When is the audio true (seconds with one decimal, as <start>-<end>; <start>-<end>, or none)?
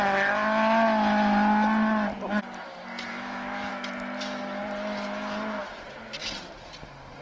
0.0-3.1; 3.7-7.2